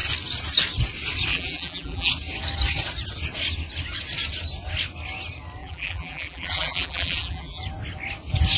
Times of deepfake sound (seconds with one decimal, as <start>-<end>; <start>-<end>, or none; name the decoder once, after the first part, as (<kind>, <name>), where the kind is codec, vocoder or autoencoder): 1.3-2.1 (vocoder, BigVGAN v2); 5.6-7.6